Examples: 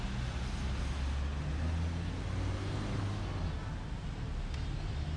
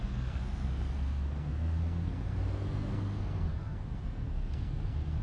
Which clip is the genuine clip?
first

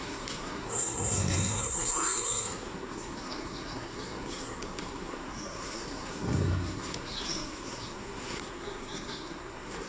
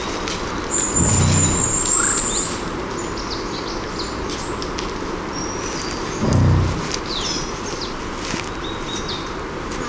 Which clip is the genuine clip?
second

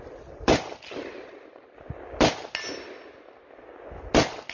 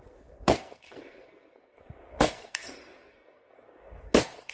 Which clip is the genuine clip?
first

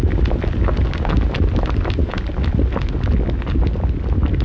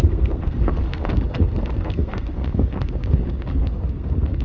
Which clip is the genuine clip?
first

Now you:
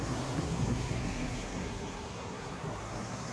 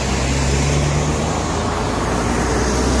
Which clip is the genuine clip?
second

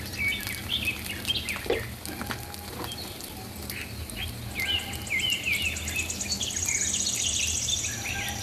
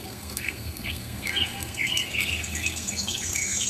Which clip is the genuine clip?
first